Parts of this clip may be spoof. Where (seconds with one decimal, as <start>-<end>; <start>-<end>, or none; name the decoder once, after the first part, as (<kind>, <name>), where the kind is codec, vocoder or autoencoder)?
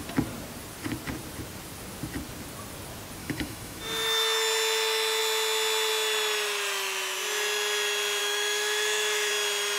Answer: 3.2-3.8 (autoencoder, DAC-VAE); 8.2-9.3